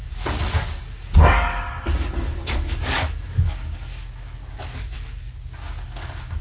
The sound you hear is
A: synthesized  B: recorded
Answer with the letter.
A